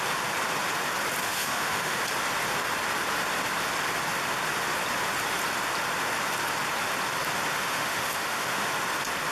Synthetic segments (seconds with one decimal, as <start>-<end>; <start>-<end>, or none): 1.2-2.0; 7.6-8.7